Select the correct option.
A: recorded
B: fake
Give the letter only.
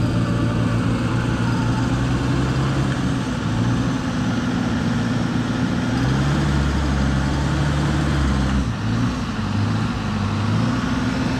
A